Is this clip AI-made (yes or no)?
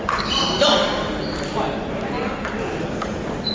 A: no